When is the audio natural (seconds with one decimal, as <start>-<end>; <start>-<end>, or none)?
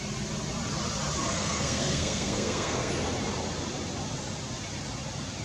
0.0-1.4; 2.9-5.4